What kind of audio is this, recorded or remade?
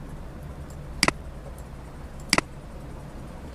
recorded